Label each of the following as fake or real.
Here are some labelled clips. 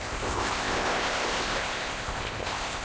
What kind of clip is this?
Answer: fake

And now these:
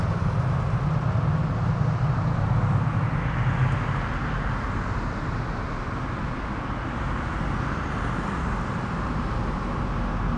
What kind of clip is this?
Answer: real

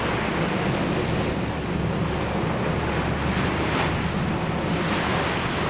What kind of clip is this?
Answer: real